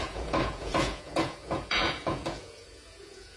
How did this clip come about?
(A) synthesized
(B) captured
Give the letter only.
A